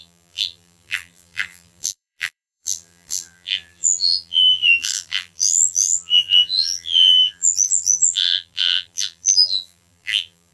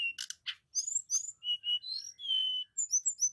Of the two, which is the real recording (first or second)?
second